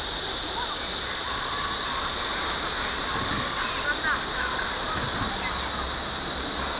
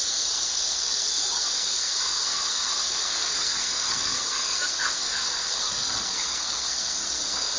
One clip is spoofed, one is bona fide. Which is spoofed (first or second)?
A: second